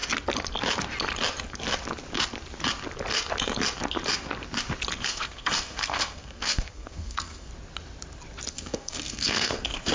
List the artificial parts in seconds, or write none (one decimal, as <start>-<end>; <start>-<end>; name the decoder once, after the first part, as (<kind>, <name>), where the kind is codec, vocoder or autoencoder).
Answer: 5.0-7.5 (codec, SNAC); 8.5-9.9